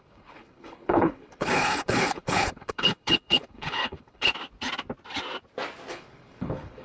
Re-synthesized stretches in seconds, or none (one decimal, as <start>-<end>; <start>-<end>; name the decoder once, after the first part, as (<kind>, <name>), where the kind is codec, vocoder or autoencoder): 0.0-4.3 (codec, HILCodec); 5.9-6.8